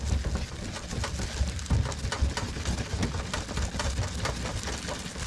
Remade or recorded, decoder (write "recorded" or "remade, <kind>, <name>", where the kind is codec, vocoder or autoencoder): recorded